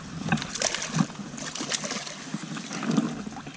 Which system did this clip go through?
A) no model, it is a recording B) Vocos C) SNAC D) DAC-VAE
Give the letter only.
A